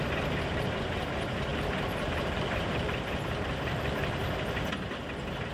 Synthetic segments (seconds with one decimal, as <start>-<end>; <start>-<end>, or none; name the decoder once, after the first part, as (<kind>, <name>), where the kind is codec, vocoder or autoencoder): 1.5-4.6 (vocoder, BigVGAN v2)